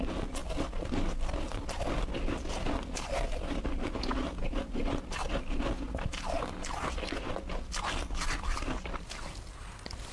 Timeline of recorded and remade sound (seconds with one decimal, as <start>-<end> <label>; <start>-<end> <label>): 0.0-10.1 recorded

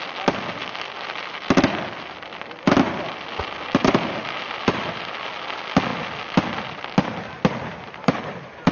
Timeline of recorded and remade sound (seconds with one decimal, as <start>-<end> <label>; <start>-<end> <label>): 0.0-8.7 recorded

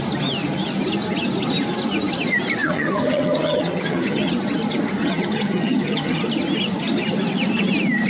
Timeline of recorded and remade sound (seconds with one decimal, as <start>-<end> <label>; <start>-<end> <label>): 0.0-2.6 recorded; 2.6-4.3 remade; 4.3-5.0 recorded; 5.0-6.2 remade; 6.2-8.1 recorded

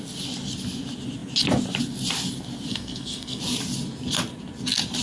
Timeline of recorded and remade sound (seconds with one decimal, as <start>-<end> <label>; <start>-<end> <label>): 0.0-2.7 recorded; 2.7-3.4 remade; 3.4-5.0 recorded

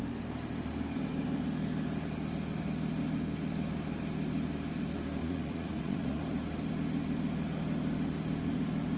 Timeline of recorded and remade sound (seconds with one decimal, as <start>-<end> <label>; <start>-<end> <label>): 0.0-5.2 recorded; 5.2-6.2 remade; 6.2-9.0 recorded

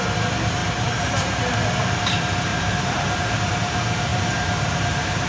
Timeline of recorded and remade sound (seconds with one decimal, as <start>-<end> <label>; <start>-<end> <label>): 0.0-0.6 recorded; 0.6-1.4 remade; 1.4-2.5 recorded; 2.5-3.3 remade; 3.3-4.1 recorded; 4.1-5.3 remade

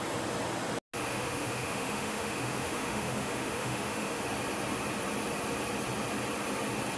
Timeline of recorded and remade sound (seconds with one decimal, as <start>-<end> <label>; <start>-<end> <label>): 0.0-1.1 recorded; 1.1-4.2 remade; 4.2-7.0 recorded

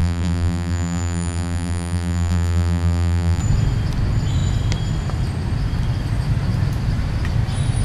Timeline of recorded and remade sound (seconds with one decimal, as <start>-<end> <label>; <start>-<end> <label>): 0.0-3.4 remade; 3.4-7.8 recorded